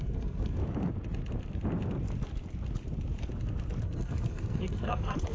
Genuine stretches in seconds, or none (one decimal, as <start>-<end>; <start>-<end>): 0.6-3.8